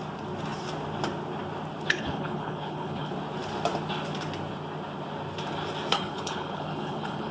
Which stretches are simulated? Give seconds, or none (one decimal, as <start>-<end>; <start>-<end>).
1.9-3.1; 5.9-7.3

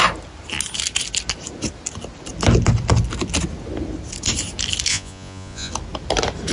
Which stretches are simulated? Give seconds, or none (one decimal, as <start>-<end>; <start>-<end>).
4.9-5.7